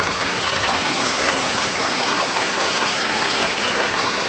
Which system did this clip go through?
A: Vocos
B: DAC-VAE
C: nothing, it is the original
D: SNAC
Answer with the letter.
D